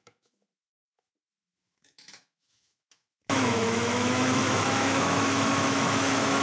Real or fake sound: fake